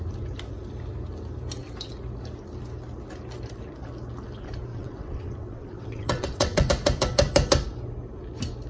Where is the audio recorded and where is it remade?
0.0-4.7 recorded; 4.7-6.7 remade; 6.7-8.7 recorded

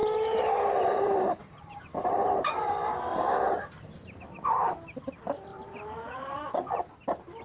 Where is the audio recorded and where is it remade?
0.0-2.7 remade; 2.7-3.1 recorded; 3.1-3.8 remade; 3.8-5.5 recorded; 5.5-6.8 remade; 6.8-7.4 recorded

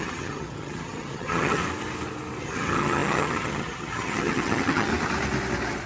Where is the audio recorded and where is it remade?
0.0-1.6 remade; 1.6-2.4 recorded; 2.4-4.9 remade; 4.9-5.9 recorded

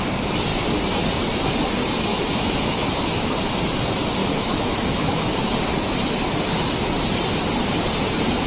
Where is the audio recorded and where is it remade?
0.0-2.1 recorded; 2.1-3.4 remade; 3.4-4.2 recorded; 4.2-5.7 remade; 5.7-8.5 recorded

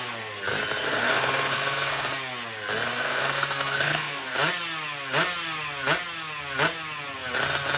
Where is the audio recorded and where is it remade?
0.0-0.8 recorded; 0.8-2.1 remade; 2.1-2.9 recorded; 2.9-4.3 remade; 4.3-7.8 recorded

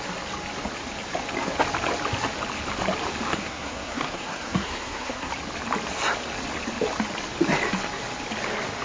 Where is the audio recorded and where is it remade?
0.0-3.3 recorded; 3.3-5.3 remade; 5.3-8.8 recorded